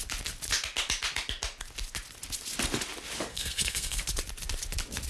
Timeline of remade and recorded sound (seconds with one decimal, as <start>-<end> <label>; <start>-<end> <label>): 0.0-3.3 recorded; 3.3-4.0 remade; 4.0-5.1 recorded